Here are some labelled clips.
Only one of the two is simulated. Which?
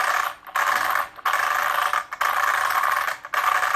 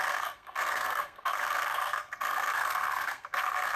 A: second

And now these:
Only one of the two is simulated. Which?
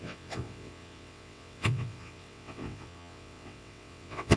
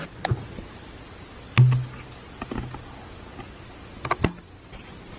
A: first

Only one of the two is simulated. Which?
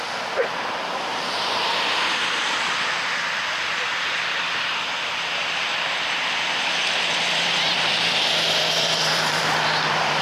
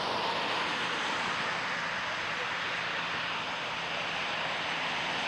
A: first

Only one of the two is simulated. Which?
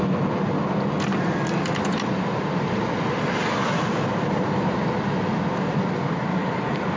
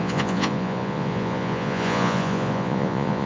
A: second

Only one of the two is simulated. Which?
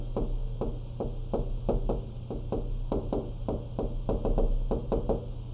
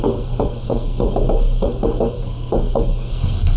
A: second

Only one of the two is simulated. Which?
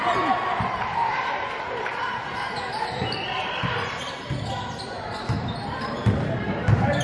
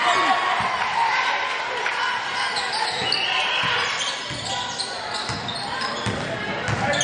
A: first